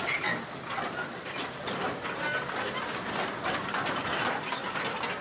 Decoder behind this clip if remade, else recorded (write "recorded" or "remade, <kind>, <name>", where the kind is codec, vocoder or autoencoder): recorded